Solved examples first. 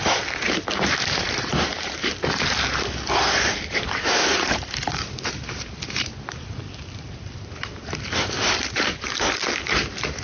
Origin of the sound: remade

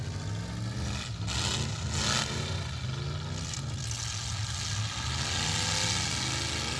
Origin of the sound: recorded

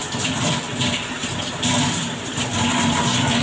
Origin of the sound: recorded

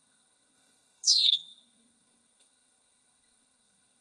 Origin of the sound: remade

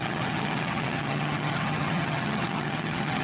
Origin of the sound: remade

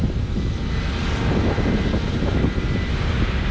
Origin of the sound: recorded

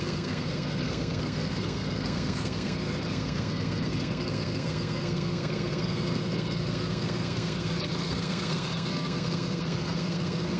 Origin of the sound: remade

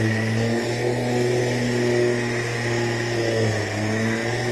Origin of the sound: recorded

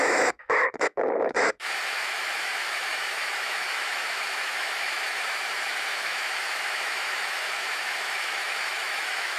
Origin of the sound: remade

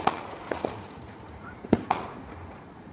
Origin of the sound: remade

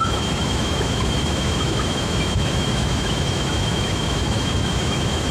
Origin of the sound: remade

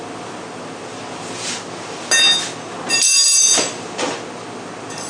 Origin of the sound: recorded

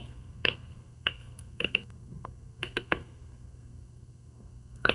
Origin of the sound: remade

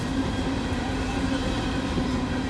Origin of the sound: recorded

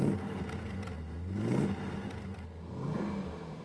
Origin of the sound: recorded